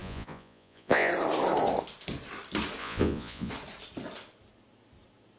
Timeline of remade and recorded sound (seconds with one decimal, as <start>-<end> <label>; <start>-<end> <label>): 0.0-1.1 remade; 1.1-2.8 recorded; 2.8-3.5 remade; 3.5-5.4 recorded